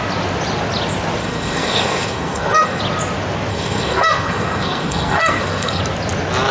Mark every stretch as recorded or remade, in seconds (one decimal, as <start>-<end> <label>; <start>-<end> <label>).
0.0-1.2 recorded; 1.2-2.8 remade; 2.8-3.5 recorded; 3.5-5.8 remade; 5.8-6.5 recorded